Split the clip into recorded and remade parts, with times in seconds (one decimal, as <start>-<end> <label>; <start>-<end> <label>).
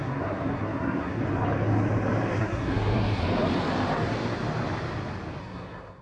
0.0-1.2 remade; 1.2-2.4 recorded; 2.4-3.2 remade; 3.2-5.4 recorded; 5.4-6.0 remade